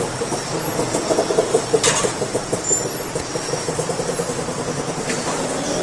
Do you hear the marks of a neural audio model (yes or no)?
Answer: yes